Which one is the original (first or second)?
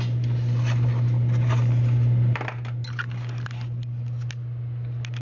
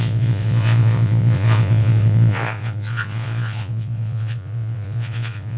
first